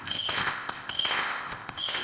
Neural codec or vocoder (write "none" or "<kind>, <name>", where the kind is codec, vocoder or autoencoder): codec, ZipCodec